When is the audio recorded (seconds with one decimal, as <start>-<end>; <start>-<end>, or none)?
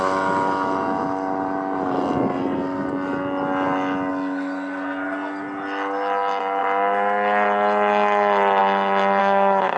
0.0-9.2